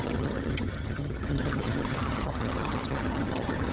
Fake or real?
fake